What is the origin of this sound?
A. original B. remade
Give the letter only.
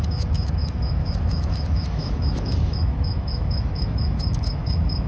B